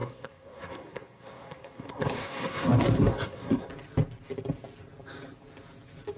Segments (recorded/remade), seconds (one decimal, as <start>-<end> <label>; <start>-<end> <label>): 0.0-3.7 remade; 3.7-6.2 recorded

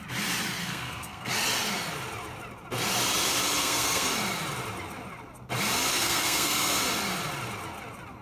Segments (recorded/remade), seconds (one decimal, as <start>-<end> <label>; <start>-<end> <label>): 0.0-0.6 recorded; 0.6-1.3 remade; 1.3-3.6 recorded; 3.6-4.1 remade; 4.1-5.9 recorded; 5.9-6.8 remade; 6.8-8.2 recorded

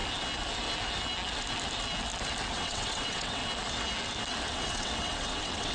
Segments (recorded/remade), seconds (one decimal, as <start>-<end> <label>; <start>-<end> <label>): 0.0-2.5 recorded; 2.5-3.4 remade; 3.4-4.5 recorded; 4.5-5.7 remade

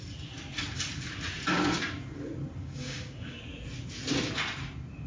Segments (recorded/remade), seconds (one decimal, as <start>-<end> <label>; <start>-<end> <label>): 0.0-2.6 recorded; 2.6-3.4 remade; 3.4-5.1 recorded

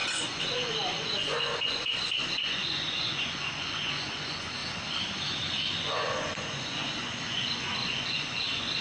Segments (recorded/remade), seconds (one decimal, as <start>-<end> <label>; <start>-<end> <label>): 0.0-4.6 remade; 4.6-5.7 recorded; 5.7-8.8 remade

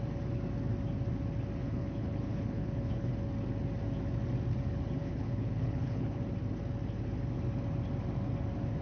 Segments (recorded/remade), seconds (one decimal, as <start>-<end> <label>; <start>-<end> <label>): 0.0-1.6 recorded; 1.6-3.1 remade; 3.1-5.0 recorded; 5.0-6.2 remade; 6.2-8.8 recorded

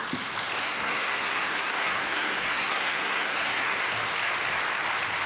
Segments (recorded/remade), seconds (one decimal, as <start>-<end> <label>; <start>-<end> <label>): 0.0-0.6 recorded; 0.6-3.8 remade; 3.8-5.3 recorded